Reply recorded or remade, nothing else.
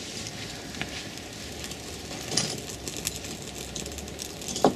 recorded